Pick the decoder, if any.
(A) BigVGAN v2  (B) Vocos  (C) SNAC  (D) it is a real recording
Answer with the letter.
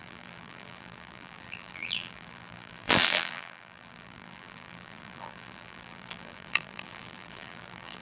A